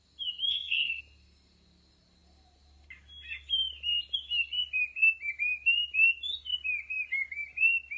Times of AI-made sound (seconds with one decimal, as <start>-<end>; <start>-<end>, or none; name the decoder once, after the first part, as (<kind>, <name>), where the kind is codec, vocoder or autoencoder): 0.5-1.0 (codec, SNAC)